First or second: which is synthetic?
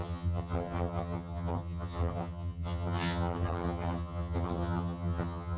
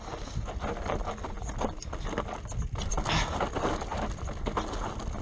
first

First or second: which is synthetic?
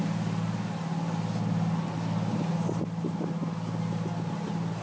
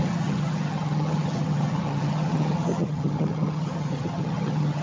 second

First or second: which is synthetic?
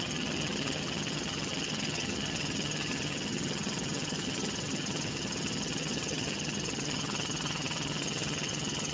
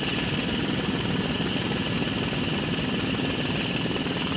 first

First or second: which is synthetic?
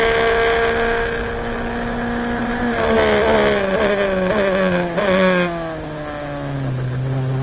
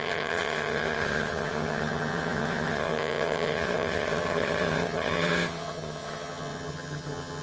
second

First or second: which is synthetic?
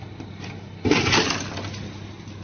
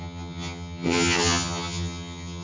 second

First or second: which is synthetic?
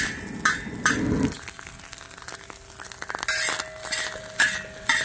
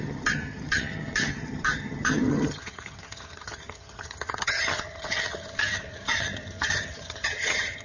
second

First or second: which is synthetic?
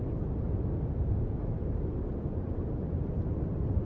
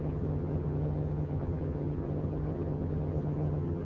second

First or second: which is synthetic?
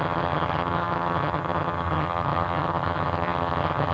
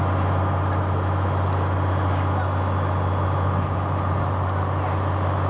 first